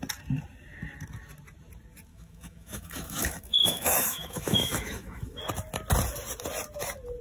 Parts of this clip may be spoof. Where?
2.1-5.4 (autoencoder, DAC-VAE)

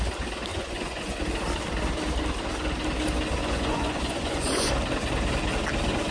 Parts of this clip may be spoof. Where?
0.5-1.2 (vocoder, Vocos); 3.4-4.7

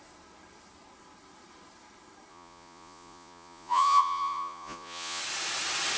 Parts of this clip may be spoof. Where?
2.3-5.2 (vocoder, Vocos)

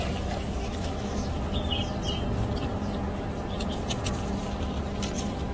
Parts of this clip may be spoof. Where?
0.7-1.3 (autoencoder, DAC-VAE)

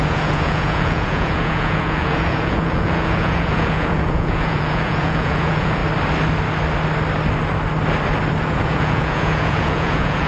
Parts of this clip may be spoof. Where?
0.0-5.8 (vocoder, Vocos); 8.4-10.3

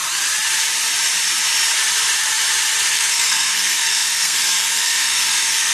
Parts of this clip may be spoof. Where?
2.9-5.7 (codec, SNAC)

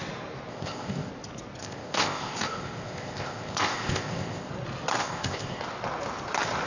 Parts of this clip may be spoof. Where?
0.5-1.1 (codec, ZipCodec); 1.6-4.5; 5.0-5.6

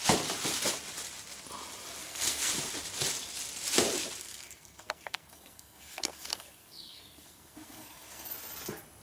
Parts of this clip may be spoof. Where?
2.0-2.5 (codec, SNAC); 4.2-8.3